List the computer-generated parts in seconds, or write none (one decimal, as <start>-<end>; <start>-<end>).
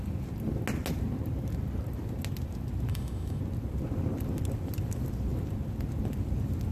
2.9-3.4